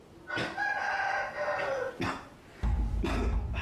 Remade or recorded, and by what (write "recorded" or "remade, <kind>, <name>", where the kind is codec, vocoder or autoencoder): recorded